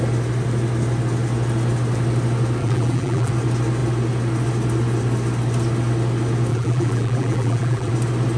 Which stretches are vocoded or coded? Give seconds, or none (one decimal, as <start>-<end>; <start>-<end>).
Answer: 2.6-3.3; 6.5-7.9